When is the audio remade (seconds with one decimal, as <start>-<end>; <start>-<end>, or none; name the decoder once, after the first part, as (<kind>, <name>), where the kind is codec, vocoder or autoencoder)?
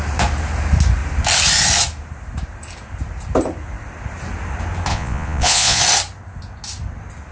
4.9-5.8 (vocoder, Vocos)